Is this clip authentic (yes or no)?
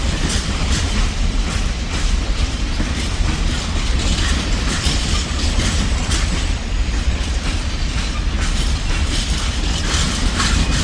no